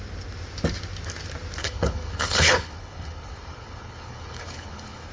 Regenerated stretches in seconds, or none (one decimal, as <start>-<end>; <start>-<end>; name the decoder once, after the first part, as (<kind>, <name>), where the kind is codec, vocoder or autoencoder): 1.6-5.1 (codec, HILCodec)